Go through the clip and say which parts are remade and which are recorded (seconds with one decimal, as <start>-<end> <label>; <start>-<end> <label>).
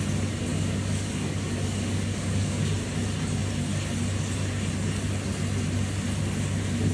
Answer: 0.0-0.5 recorded; 0.5-2.6 remade; 2.6-6.9 recorded